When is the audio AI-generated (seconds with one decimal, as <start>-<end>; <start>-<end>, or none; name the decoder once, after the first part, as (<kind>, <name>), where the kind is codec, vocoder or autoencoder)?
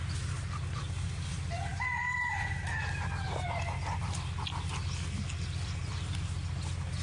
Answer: none